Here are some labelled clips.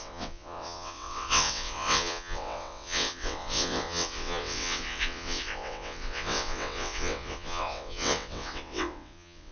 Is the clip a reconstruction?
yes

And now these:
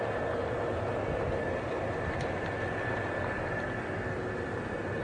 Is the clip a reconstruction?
no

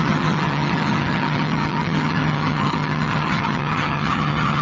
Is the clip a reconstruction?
yes